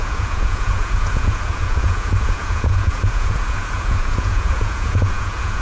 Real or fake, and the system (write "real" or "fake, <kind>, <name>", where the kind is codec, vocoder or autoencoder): fake, vocoder, Vocos